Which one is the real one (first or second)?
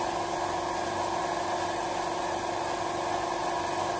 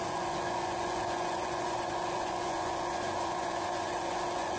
first